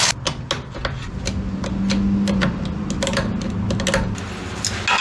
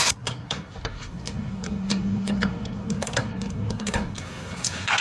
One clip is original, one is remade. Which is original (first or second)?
first